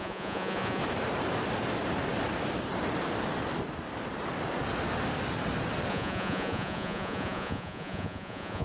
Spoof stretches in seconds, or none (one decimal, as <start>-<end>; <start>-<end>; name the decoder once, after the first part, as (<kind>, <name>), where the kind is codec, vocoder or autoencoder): 0.0-0.8 (vocoder, Vocos); 5.9-8.6